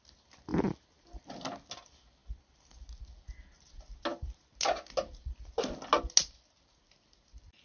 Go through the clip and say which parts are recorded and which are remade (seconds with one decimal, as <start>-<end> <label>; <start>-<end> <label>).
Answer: 0.0-7.6 recorded